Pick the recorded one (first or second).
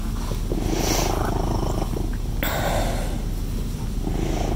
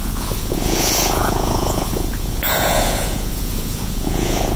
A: first